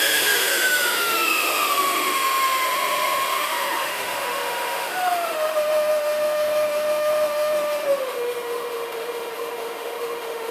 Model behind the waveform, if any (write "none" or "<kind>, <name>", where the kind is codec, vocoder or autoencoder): autoencoder, DAC-VAE